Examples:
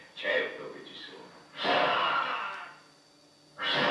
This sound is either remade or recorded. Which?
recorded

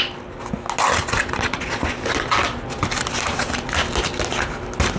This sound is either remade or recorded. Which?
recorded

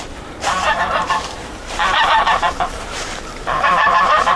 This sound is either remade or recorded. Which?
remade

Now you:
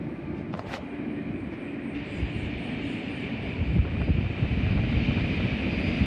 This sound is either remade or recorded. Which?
remade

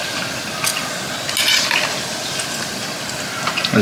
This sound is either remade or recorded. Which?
recorded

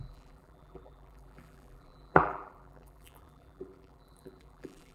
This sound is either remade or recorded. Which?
remade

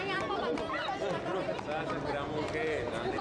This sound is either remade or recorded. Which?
recorded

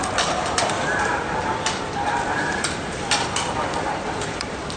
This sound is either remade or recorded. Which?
remade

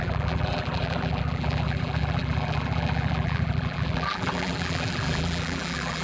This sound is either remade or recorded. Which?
remade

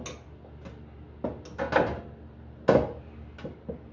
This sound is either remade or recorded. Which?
recorded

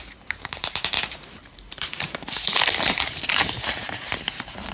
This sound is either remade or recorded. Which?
remade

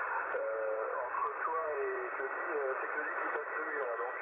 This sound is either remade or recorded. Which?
remade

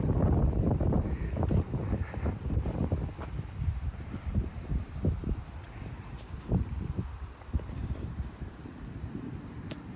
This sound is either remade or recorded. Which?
remade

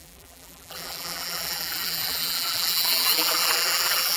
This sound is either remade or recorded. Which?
remade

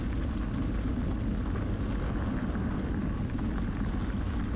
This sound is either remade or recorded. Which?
recorded